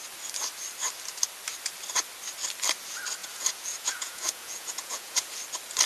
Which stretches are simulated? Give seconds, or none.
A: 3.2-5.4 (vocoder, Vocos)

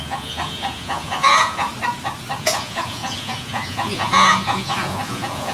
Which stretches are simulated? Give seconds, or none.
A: 0.0-1.7 (vocoder, Vocos); 2.4-5.5

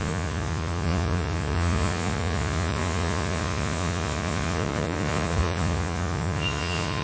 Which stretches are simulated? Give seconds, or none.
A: 0.0-7.0 (vocoder, Vocos)

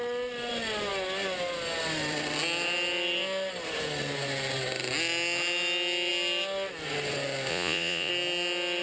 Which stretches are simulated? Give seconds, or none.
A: 7.5-8.1 (vocoder, Vocos)